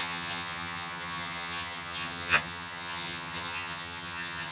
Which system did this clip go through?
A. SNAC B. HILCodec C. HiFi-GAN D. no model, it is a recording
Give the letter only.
C